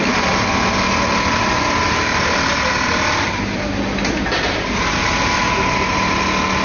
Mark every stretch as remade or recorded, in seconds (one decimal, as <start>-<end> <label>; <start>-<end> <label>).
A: 0.0-6.6 recorded